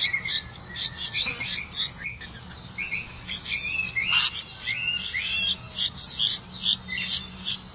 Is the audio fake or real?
real